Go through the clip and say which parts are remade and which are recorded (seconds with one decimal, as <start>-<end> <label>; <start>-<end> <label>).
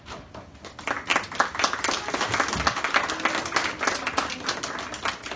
0.0-5.4 recorded